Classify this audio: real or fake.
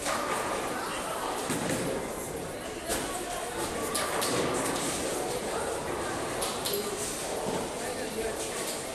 real